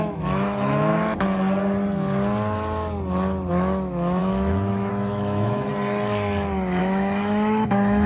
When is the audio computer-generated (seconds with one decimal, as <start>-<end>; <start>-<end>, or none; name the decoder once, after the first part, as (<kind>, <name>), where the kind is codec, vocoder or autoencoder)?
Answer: 0.0-0.9 (autoencoder, DAC-VAE); 3.5-5.7; 6.8-8.1